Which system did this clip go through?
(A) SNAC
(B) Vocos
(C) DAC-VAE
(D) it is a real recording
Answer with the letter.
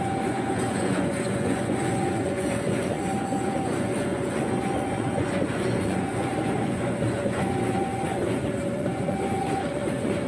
B